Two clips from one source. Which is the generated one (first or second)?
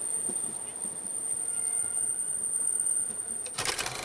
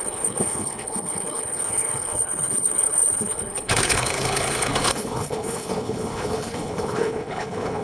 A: second